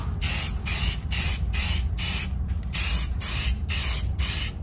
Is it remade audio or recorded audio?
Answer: recorded